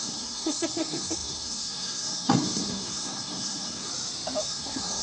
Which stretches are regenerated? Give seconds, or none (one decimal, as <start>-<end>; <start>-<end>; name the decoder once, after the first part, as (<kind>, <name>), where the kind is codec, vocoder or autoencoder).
0.0-3.9 (codec, SNAC); 4.4-5.0